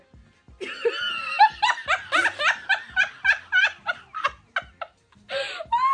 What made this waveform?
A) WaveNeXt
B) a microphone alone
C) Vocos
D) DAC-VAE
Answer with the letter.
B